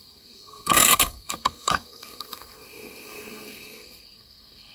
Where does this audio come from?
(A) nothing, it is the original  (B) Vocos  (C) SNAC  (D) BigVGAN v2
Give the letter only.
C